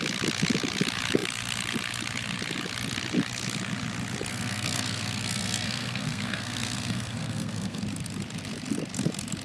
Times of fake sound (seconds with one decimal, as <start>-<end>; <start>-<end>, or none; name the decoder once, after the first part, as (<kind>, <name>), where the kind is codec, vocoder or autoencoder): 4.3-7.8 (codec, SNAC)